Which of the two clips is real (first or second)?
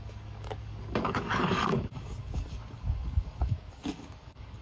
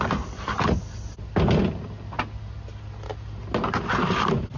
second